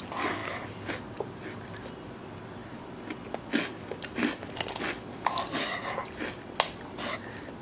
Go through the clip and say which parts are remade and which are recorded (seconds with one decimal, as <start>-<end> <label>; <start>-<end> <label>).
0.0-7.6 recorded